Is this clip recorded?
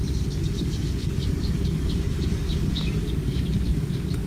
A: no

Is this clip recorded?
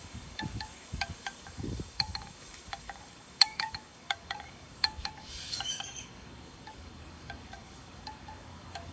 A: no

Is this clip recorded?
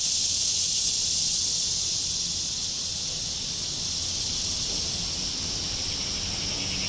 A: yes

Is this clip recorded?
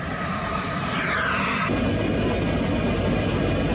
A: yes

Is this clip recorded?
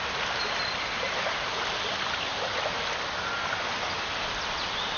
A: yes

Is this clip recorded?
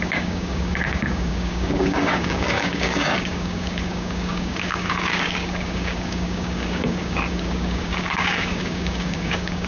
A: no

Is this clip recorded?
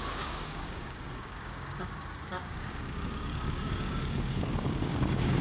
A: no